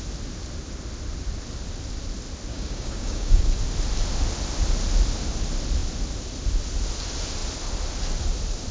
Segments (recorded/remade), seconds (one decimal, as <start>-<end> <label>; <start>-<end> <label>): 0.0-2.5 recorded; 2.5-3.4 remade; 3.4-8.7 recorded